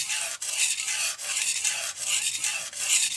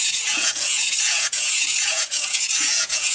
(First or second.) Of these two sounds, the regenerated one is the second